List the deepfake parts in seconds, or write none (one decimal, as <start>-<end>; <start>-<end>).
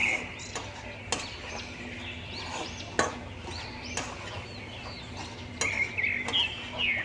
none